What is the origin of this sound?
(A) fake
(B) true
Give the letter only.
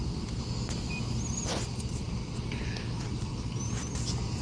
B